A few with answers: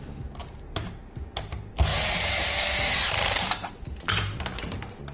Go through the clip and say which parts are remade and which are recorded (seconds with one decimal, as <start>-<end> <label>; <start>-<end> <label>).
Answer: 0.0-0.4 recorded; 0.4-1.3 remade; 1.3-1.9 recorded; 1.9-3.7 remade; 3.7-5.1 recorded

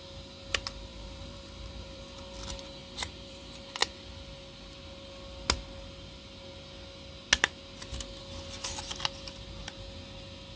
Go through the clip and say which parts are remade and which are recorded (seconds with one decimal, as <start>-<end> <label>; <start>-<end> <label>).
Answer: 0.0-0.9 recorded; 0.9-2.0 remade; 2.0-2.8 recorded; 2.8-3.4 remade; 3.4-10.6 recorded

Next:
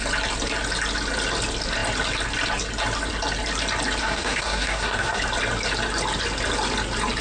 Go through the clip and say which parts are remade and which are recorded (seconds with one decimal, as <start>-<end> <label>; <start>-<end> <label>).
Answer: 0.0-4.0 recorded; 4.0-5.2 remade; 5.2-7.2 recorded

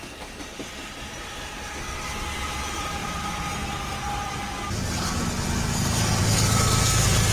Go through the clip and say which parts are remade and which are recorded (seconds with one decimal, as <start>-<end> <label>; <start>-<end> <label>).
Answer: 0.0-7.3 recorded

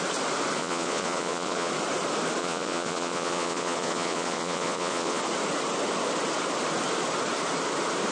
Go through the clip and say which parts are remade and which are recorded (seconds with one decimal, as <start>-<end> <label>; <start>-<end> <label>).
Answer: 0.0-0.6 recorded; 0.6-1.7 remade; 1.7-2.4 recorded; 2.4-5.2 remade; 5.2-8.1 recorded

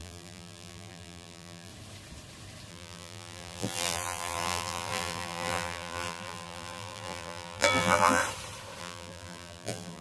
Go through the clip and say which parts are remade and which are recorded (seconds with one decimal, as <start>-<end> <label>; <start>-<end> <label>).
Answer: 0.0-1.7 remade; 1.7-2.7 recorded; 2.7-8.2 remade; 8.2-8.8 recorded; 8.8-10.0 remade

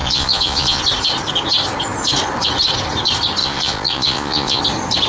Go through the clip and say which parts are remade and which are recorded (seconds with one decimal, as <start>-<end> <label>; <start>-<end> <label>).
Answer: 0.0-0.8 remade; 0.8-3.4 recorded; 3.4-4.6 remade; 4.6-5.1 recorded